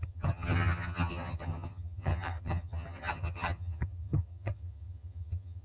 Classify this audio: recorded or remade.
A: remade